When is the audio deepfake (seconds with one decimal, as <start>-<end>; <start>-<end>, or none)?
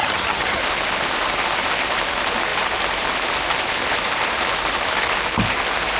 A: 0.0-0.6